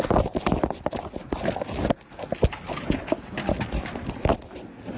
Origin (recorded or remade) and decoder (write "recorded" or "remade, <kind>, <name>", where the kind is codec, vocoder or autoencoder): recorded